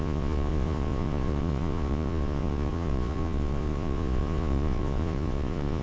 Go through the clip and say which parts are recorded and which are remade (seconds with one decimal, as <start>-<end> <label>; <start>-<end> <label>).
0.0-5.8 remade